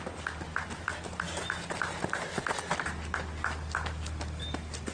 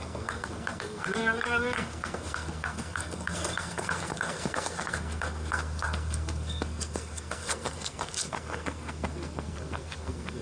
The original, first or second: first